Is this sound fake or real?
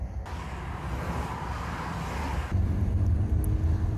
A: real